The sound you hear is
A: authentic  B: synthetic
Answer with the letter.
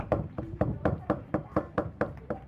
B